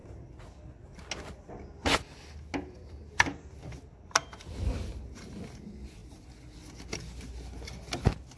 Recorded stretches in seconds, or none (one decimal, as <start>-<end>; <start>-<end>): 0.0-8.4